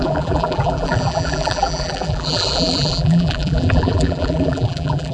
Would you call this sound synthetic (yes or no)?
yes